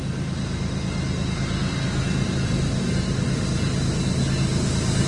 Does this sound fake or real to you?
real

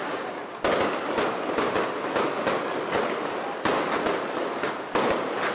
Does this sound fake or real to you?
real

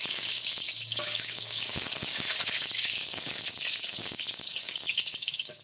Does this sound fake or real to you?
fake